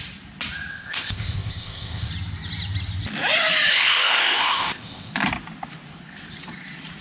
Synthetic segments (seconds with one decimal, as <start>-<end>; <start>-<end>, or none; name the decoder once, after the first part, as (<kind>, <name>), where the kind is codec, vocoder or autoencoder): 0.7-2.1 (codec, ZipCodec); 3.7-5.1